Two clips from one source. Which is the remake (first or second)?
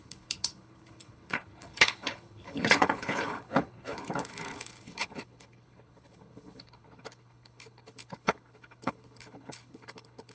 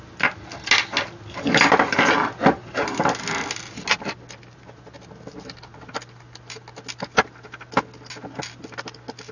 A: first